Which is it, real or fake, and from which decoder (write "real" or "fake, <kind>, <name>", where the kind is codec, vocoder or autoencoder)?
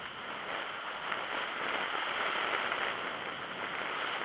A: real